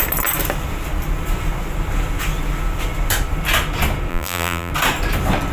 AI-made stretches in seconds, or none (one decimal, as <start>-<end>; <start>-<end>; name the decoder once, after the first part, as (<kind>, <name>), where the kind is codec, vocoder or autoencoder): 4.1-4.7 (vocoder, BigVGAN v2)

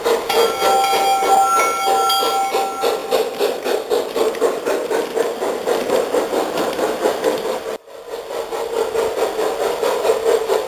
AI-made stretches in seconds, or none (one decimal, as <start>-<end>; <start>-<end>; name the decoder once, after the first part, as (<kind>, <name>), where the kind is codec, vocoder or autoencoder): none

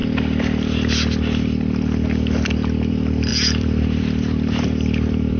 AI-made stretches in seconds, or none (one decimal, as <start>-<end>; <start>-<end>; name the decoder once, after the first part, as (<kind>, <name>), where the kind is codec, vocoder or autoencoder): 3.3-5.4 (vocoder, BigVGAN v2)